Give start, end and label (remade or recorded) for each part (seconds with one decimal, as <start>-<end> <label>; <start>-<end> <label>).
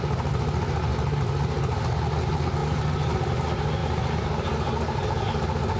0.0-2.6 recorded; 2.6-3.3 remade; 3.3-5.8 recorded